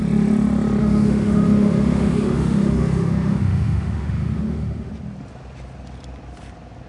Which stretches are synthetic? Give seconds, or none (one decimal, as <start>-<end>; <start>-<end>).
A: 0.8-4.9